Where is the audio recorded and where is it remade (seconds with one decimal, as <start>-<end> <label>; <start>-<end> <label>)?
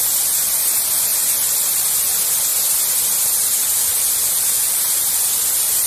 0.0-1.1 recorded; 1.1-1.8 remade; 1.8-2.5 recorded; 2.5-5.1 remade; 5.1-5.9 recorded